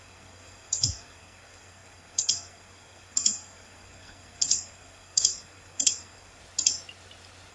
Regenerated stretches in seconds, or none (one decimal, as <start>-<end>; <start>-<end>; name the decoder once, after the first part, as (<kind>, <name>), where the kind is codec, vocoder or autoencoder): 0.0-6.4 (codec, SNAC)